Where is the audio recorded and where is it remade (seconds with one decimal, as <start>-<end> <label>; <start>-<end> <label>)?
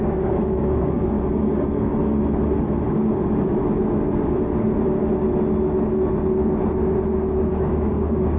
0.0-1.9 remade; 1.9-2.9 recorded; 2.9-3.6 remade; 3.6-7.5 recorded; 7.5-8.4 remade